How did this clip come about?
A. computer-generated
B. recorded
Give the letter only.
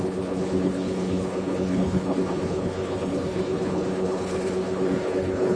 A